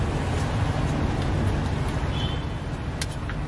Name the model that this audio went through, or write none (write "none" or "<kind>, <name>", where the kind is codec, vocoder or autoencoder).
none